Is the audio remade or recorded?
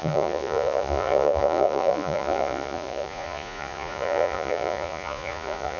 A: remade